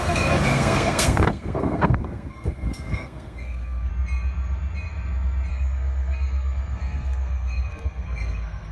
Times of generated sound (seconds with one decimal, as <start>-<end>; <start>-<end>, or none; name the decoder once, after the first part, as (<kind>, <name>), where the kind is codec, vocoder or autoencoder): 0.0-3.9 (codec, SNAC); 5.5-8.7